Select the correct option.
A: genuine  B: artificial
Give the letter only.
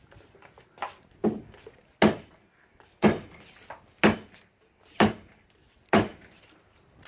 A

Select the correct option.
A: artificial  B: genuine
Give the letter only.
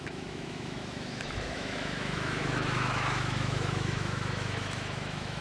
A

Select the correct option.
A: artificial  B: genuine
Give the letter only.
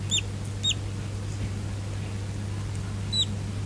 B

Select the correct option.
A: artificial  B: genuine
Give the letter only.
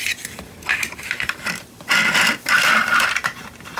A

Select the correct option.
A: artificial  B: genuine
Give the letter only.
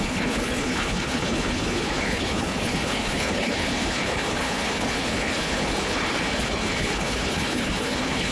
A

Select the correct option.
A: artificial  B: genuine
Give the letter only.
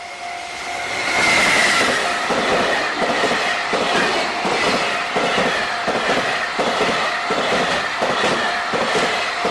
B